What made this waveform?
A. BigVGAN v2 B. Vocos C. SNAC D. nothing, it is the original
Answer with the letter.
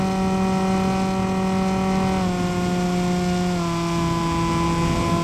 D